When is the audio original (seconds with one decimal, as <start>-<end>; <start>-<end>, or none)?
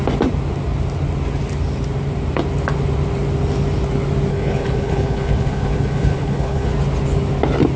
0.0-4.3; 6.7-7.8